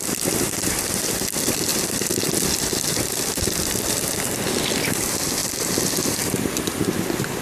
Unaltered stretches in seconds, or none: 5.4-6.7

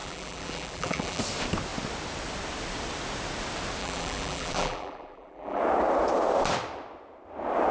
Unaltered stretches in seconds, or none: 1.2-3.8; 5.6-7.7

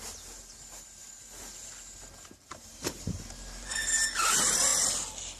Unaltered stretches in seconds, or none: 4.7-5.4

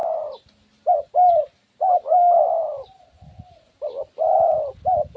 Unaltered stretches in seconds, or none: 0.0-5.2

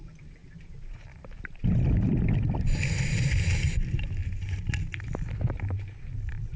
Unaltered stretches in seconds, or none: 0.0-0.4; 2.1-4.2; 4.7-6.6

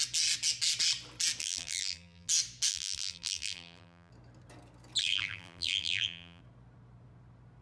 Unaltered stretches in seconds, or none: 0.0-1.4; 2.3-2.7; 4.1-5.0; 6.4-7.6

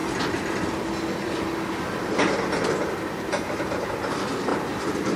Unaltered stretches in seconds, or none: 0.0-2.1

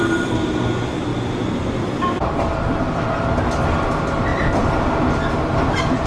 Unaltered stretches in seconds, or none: 0.0-1.1; 3.4-4.3; 5.3-6.1